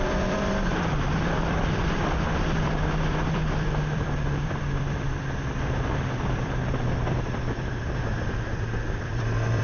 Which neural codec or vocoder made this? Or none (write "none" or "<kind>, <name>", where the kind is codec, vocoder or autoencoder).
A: vocoder, BigVGAN v2